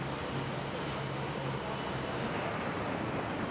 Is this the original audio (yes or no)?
yes